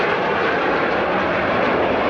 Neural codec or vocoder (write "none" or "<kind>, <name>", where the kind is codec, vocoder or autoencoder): none